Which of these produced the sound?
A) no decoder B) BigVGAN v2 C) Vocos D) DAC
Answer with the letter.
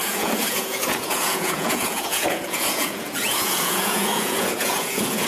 C